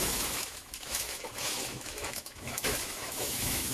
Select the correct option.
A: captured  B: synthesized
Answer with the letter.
B